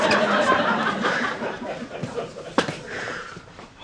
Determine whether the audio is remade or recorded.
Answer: remade